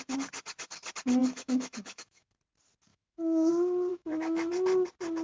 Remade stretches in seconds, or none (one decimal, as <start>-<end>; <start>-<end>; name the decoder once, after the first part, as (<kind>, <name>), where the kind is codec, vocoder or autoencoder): 1.2-2.3 (autoencoder, DAC-VAE); 2.9-3.5; 3.9-4.5